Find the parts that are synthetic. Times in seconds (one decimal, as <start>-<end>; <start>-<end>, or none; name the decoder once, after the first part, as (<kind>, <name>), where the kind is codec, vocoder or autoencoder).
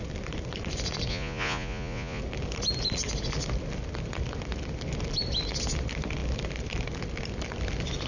1.1-2.2 (vocoder, Vocos)